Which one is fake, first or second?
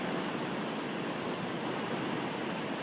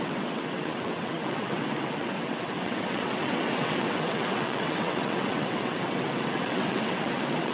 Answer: second